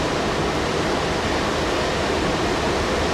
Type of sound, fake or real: real